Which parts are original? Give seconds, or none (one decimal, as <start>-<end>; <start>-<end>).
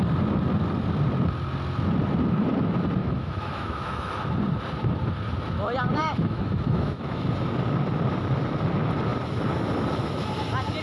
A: 0.0-3.0; 4.1-6.0; 7.3-10.8